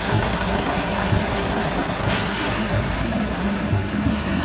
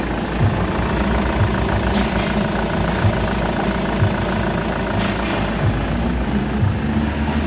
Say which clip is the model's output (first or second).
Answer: first